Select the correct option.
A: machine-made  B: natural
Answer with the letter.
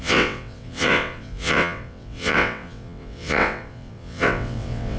A